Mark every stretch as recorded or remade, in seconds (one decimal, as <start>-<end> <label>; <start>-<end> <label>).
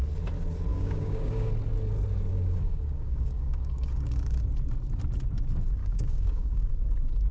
0.0-0.7 recorded; 0.7-1.5 remade; 1.5-2.3 recorded; 2.3-4.4 remade; 4.4-5.8 recorded; 5.8-6.7 remade; 6.7-7.3 recorded